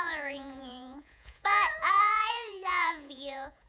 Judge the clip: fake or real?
fake